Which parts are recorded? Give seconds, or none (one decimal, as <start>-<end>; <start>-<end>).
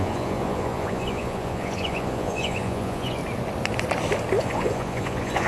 3.2-4.4